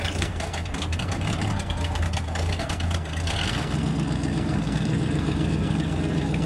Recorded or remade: remade